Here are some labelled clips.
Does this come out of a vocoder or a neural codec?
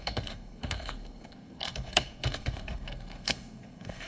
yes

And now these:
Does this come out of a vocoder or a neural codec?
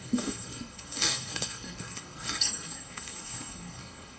yes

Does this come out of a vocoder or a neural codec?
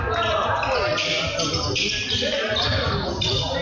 no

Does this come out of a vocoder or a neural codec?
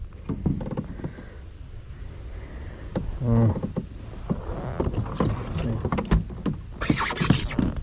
no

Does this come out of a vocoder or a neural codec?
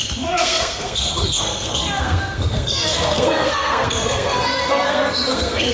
yes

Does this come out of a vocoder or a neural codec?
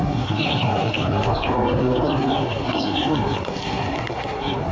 yes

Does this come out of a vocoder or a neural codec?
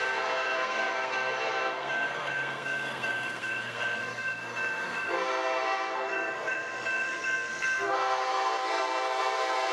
yes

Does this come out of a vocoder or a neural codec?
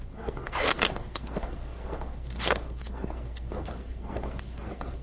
yes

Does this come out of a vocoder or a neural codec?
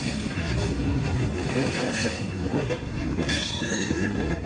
yes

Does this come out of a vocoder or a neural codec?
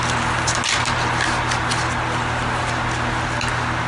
no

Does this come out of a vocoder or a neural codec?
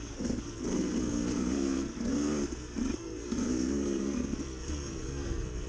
yes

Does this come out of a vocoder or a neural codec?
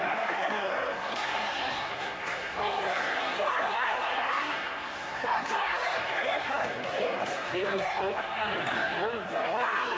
yes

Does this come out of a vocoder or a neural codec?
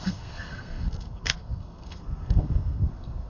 yes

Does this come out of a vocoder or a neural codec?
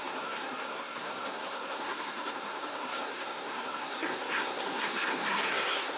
yes